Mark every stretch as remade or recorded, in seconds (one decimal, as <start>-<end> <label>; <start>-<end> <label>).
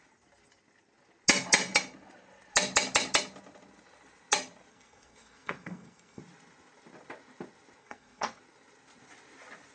0.0-4.7 recorded; 4.7-6.2 remade; 6.2-7.8 recorded; 7.8-8.4 remade; 8.4-9.7 recorded